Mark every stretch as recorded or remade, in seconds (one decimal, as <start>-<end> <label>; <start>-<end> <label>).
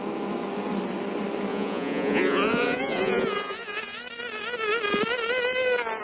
0.0-1.5 recorded; 1.5-4.0 remade; 4.0-6.0 recorded